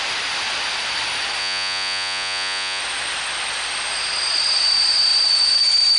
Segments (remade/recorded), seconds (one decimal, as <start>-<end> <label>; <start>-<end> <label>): 0.0-1.4 recorded; 1.4-2.8 remade; 2.8-6.0 recorded